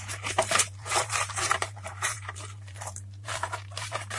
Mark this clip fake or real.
fake